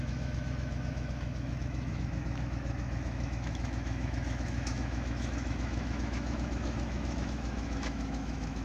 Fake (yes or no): yes